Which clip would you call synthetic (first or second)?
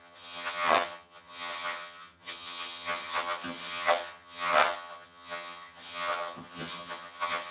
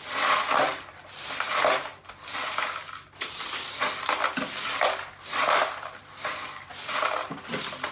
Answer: first